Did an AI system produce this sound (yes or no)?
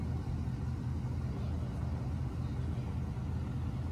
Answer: no